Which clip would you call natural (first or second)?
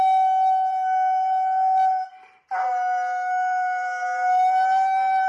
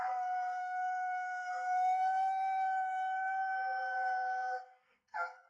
first